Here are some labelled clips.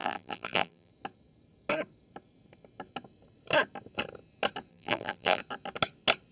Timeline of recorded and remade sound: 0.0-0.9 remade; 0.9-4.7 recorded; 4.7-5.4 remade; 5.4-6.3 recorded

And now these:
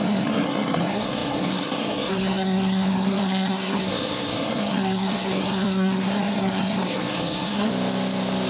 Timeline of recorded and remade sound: 0.0-7.7 remade; 7.7-8.5 recorded

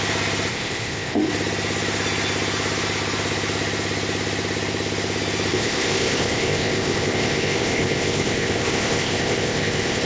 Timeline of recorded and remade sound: 0.0-0.5 recorded; 0.5-1.3 remade; 1.3-5.5 recorded; 5.5-10.1 remade

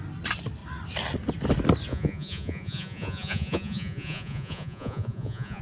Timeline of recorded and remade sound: 0.0-1.9 recorded; 1.9-5.6 remade

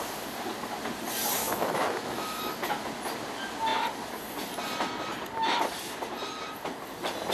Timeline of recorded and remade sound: 0.0-1.4 recorded; 1.4-2.4 remade; 2.4-7.3 recorded

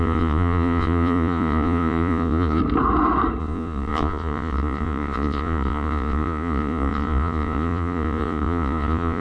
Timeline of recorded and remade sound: 0.0-2.6 remade; 2.6-3.4 recorded; 3.4-9.2 remade

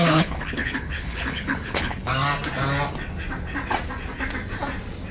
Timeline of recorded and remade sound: 0.0-2.1 remade; 2.1-5.1 recorded

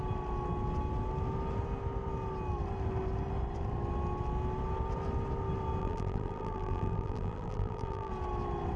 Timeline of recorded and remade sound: 0.0-5.8 recorded; 5.8-8.1 remade; 8.1-8.8 recorded